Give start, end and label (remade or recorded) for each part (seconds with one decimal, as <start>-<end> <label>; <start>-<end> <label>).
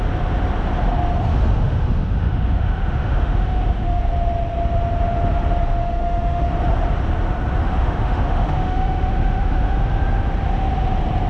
0.0-1.3 recorded; 1.3-4.0 remade; 4.0-5.8 recorded; 5.8-6.5 remade; 6.5-7.6 recorded; 7.6-9.8 remade; 9.8-11.3 recorded